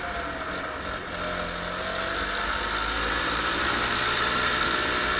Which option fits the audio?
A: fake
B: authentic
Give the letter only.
B